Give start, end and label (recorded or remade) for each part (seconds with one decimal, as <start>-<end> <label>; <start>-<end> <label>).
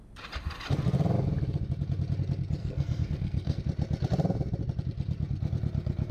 0.0-2.6 recorded; 2.6-3.6 remade; 3.6-6.1 recorded